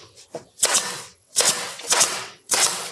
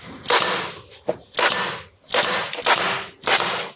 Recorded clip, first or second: second